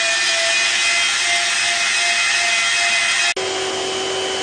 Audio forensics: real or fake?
real